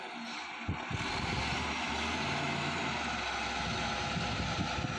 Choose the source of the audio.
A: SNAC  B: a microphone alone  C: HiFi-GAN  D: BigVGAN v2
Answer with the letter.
B